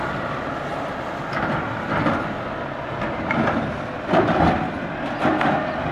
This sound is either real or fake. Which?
real